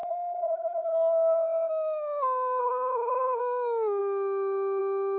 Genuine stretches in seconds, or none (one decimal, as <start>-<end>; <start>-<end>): 1.7-2.6; 3.4-5.2